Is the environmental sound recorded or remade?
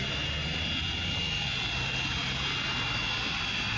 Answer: recorded